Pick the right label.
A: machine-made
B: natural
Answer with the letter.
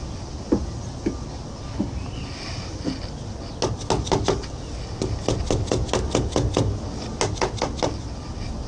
B